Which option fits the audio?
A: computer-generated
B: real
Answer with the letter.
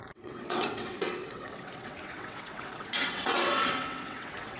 A